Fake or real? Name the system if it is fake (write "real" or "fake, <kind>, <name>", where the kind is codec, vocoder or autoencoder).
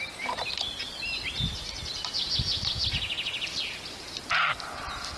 real